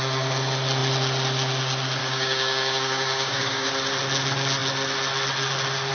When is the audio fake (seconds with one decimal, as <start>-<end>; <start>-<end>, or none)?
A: 2.0-3.7